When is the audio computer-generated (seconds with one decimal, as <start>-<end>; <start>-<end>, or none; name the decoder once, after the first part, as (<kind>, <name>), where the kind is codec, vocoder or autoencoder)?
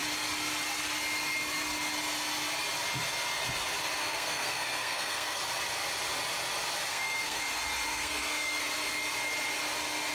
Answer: 4.0-5.4 (codec, SNAC); 6.9-7.4; 7.9-8.6